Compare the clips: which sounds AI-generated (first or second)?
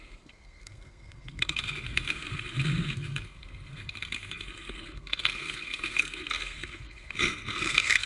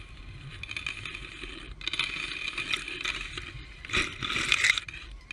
first